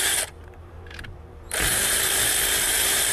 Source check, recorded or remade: remade